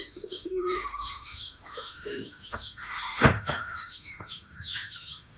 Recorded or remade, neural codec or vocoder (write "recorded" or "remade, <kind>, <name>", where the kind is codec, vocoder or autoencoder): remade, autoencoder, DAC-VAE